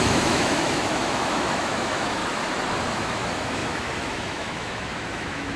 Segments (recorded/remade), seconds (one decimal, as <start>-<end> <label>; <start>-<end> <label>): 0.0-2.2 remade; 2.2-2.9 recorded; 2.9-5.6 remade